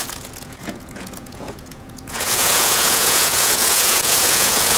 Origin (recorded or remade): remade